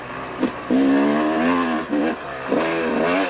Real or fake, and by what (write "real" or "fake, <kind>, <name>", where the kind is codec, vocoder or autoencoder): real